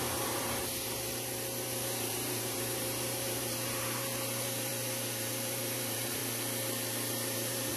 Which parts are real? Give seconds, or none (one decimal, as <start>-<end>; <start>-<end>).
6.2-7.1